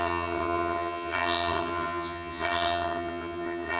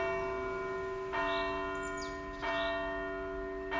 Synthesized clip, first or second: first